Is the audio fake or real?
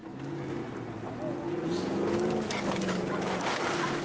real